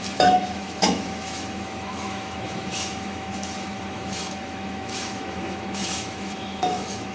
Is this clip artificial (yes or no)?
yes